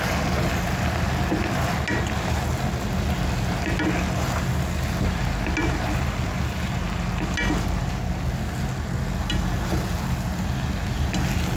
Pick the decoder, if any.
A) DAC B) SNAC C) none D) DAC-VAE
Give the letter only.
C